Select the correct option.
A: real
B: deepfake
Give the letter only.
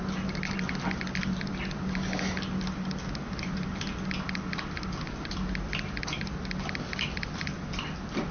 A